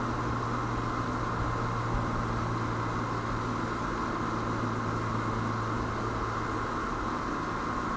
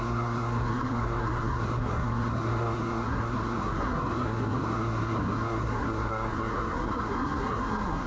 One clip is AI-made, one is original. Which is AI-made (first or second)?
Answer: second